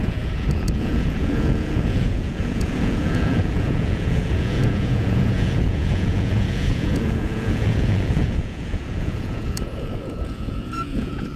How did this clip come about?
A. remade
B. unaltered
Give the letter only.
A